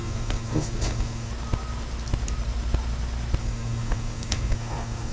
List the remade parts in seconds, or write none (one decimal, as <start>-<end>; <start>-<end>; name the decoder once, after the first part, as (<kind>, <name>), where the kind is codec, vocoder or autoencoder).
0.0-1.3 (codec, SNAC); 3.4-5.1